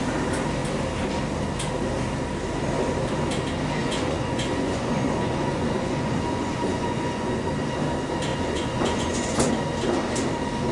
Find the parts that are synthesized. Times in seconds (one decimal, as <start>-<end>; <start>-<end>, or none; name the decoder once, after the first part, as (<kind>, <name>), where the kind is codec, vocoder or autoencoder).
3.8-7.5 (vocoder, Vocos); 8.3-9.5